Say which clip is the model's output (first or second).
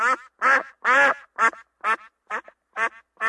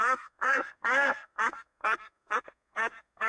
second